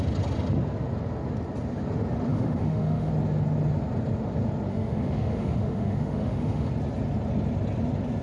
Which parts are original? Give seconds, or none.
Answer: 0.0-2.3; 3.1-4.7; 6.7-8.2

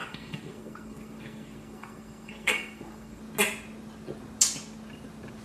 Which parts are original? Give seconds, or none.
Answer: 3.2-5.4